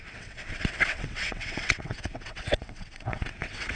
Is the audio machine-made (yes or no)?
yes